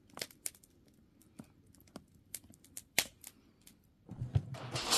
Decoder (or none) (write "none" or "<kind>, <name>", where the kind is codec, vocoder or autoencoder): none